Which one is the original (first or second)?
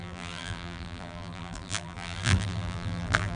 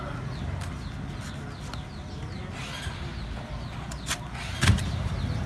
second